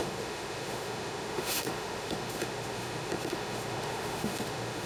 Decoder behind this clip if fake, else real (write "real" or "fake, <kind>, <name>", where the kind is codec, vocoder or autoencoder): fake, autoencoder, DAC-VAE